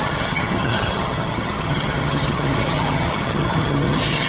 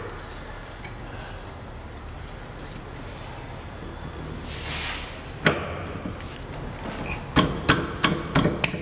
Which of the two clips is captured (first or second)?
second